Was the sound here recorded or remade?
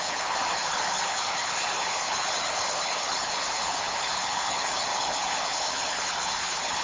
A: remade